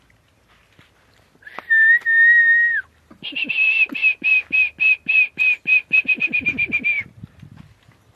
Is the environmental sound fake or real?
real